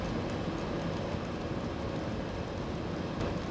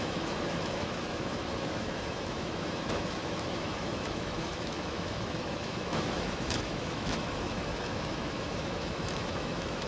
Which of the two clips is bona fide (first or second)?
first